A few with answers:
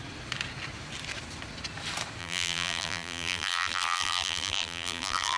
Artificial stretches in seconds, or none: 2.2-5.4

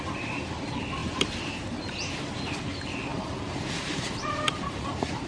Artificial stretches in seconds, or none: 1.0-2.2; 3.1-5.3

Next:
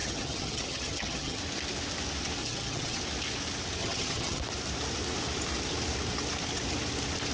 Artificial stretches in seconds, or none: 0.0-1.4; 2.4-3.0; 3.8-4.4

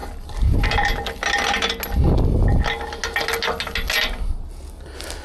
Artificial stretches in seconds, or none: none

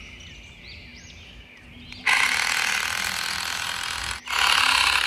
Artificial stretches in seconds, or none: none

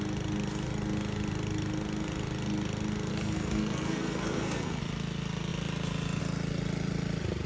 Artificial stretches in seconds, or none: 3.1-4.8

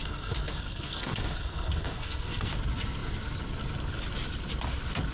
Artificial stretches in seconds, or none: 0.0-2.5

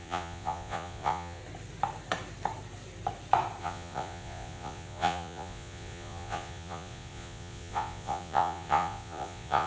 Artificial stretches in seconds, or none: 0.0-1.4; 3.6-9.7